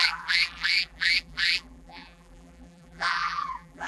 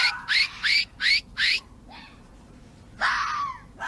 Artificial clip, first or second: first